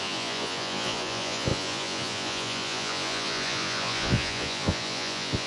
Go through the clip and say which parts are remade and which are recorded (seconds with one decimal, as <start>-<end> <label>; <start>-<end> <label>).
0.0-5.5 remade